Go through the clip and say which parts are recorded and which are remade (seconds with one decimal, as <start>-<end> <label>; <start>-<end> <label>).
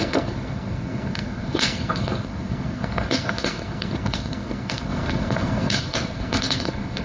0.0-7.0 remade